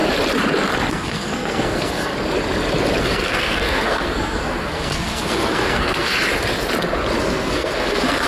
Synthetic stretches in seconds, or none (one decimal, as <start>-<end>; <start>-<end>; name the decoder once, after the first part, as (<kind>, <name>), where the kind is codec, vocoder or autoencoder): 0.9-2.1 (codec, SNAC); 3.0-6.1; 7.2-8.3

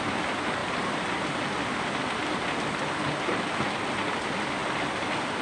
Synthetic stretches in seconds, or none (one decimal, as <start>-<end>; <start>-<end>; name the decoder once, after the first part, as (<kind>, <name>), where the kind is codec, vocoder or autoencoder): none

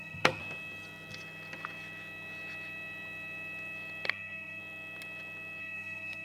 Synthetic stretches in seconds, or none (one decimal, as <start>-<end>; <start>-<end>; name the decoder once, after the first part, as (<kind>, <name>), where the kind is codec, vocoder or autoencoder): 0.0-0.4 (codec, SNAC); 4.1-4.6; 5.6-6.2

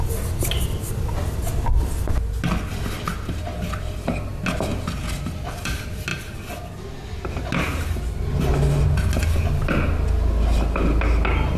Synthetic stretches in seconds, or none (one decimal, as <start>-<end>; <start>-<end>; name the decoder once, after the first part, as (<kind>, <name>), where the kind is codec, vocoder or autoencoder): none

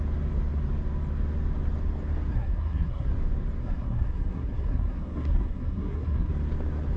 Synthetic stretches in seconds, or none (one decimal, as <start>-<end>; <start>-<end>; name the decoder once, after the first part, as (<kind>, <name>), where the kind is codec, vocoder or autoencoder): 2.3-3.1 (codec, SNAC); 3.6-6.3

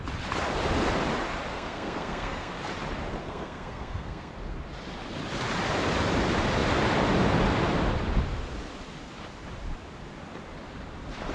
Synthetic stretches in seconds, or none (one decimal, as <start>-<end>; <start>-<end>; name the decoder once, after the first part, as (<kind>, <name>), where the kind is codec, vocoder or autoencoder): 1.5-2.5 (codec, SNAC); 3.2-4.3

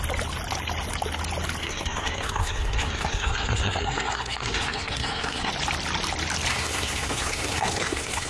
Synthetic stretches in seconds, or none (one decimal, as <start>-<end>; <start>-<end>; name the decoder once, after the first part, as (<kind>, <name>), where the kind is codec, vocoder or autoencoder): 1.6-5.5 (codec, SNAC); 6.5-8.3